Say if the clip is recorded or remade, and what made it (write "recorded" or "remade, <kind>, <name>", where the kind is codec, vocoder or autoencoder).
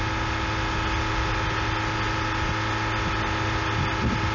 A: recorded